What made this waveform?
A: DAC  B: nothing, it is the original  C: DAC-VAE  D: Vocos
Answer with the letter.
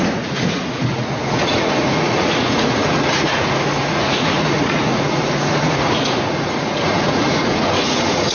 D